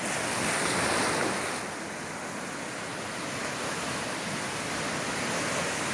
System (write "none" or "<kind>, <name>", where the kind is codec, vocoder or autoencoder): none